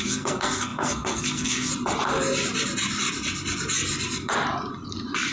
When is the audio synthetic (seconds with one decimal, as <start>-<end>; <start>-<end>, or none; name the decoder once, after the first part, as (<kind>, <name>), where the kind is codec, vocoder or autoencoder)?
0.0-1.7 (codec, SNAC)